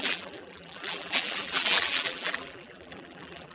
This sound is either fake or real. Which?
fake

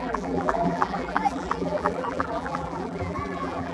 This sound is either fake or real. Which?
fake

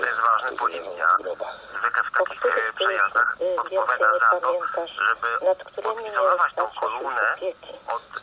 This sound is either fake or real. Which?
real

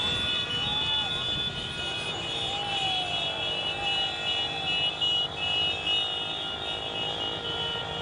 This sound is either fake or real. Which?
real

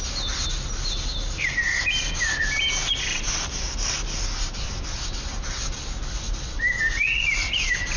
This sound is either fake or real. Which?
real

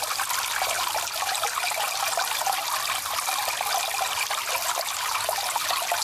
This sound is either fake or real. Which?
real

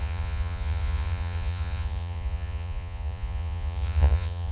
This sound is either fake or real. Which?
fake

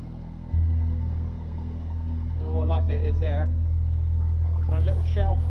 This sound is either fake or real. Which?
fake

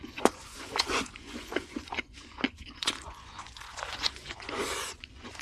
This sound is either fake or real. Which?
fake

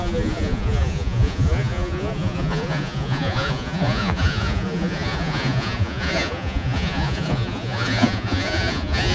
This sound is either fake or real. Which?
fake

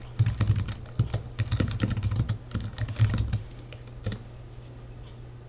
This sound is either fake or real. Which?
real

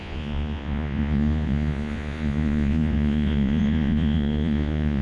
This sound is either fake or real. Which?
fake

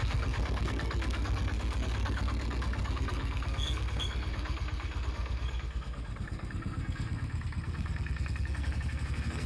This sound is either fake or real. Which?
fake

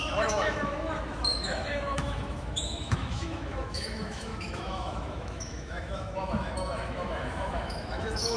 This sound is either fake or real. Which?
fake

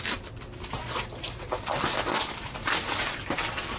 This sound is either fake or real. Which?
real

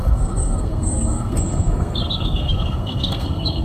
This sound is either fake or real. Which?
fake